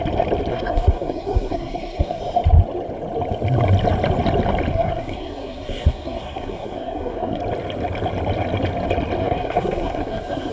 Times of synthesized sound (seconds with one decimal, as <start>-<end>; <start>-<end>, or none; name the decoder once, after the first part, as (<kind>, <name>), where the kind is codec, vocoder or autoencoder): 0.5-2.2 (codec, SNAC); 4.7-7.4; 9.2-10.5